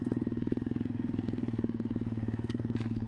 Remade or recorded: remade